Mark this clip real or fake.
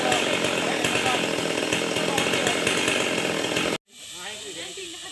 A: real